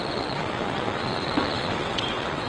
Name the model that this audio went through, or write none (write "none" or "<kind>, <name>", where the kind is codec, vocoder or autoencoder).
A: vocoder, WaveNeXt